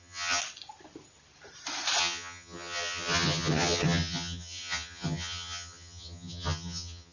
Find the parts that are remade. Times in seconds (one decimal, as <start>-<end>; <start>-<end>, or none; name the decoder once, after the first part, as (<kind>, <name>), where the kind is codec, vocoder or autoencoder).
0.0-0.4 (vocoder, HiFi-GAN); 2.0-7.1